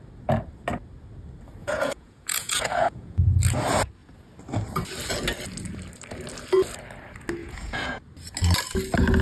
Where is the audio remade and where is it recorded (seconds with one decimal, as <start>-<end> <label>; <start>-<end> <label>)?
0.0-1.6 recorded; 1.6-3.2 remade; 3.2-7.4 recorded; 7.4-8.0 remade; 8.0-9.2 recorded